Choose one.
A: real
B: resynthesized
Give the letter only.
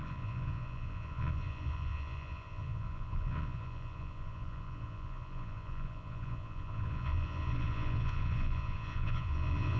B